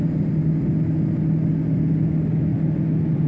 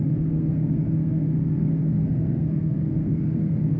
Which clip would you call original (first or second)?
first